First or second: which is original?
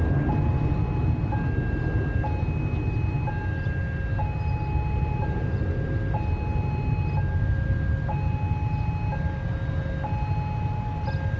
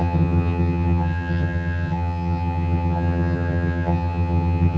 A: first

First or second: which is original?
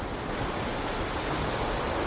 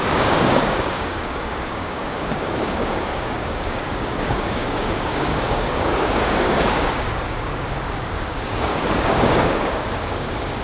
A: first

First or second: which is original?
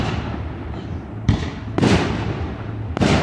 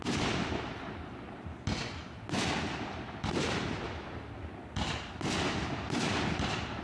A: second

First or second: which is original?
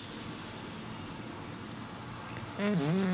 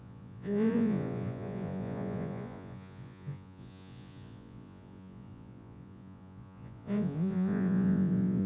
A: first